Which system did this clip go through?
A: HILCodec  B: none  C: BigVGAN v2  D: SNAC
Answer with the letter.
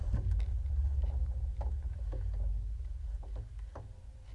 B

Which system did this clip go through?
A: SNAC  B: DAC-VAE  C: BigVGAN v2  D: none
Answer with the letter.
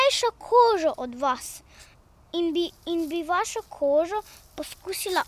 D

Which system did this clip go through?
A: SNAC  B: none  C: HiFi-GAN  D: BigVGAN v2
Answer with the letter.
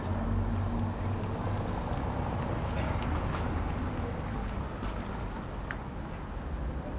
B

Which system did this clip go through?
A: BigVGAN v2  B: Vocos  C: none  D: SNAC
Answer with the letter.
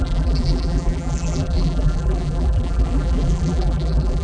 A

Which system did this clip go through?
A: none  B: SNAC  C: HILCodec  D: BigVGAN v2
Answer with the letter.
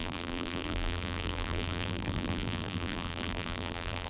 D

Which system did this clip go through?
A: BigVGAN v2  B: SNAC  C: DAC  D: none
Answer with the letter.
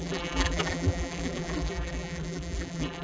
A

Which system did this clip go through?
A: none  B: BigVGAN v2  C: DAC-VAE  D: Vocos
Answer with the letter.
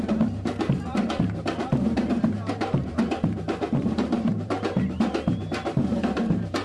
B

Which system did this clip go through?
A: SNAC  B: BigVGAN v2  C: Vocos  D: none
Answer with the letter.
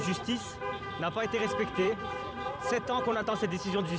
B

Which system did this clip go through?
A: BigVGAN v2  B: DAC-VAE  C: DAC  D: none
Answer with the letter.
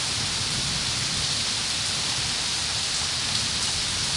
D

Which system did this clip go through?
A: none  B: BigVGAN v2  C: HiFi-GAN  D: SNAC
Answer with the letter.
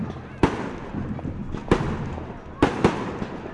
A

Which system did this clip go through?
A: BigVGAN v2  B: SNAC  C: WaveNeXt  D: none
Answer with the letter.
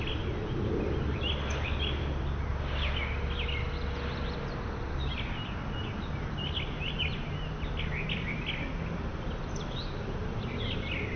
D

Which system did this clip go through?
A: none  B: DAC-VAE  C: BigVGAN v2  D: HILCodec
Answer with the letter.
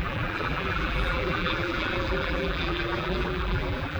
C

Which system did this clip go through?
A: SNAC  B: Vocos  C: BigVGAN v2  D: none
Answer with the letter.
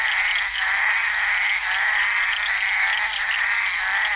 D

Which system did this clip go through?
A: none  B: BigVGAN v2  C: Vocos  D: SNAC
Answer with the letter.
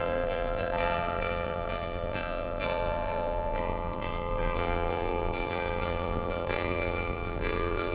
B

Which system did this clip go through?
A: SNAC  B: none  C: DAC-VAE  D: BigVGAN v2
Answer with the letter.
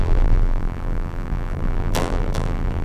D